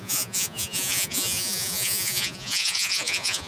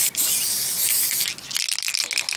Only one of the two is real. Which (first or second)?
second